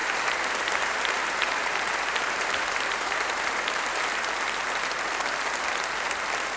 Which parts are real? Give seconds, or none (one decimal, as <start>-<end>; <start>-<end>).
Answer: 4.0-6.6